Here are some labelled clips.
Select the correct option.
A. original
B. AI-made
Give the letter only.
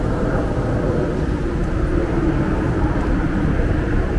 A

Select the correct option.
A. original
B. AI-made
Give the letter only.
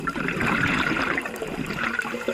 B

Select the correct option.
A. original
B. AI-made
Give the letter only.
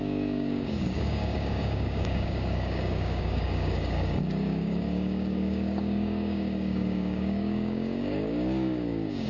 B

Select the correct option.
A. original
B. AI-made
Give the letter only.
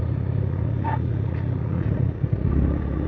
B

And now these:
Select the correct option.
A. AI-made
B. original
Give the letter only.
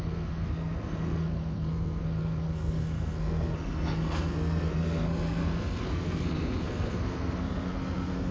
A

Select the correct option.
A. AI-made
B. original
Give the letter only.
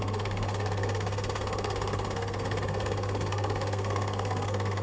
A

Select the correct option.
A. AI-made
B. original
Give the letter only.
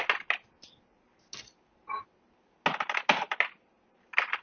B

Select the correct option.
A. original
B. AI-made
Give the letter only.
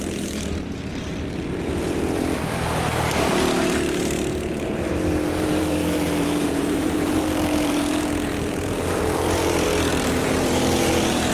B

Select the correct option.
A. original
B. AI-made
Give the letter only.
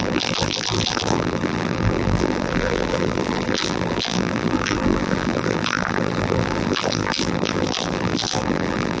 B